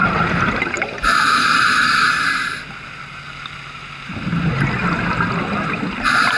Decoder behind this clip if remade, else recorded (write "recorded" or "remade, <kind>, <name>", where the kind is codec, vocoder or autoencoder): recorded